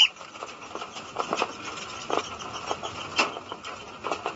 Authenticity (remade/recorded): recorded